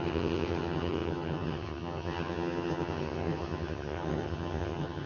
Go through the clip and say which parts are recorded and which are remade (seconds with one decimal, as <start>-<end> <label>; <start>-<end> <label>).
0.0-5.1 remade